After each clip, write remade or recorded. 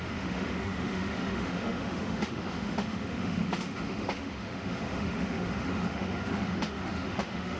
remade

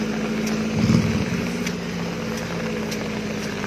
recorded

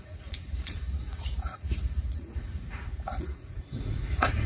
remade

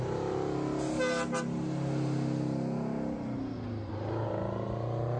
recorded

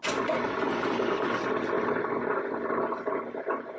recorded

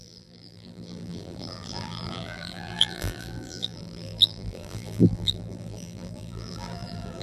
remade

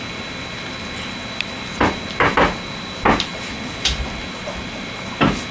remade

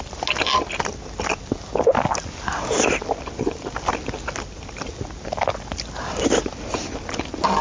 recorded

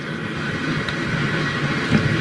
recorded